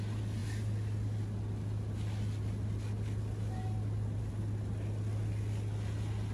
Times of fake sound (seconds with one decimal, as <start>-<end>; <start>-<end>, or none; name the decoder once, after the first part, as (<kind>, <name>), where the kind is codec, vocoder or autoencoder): none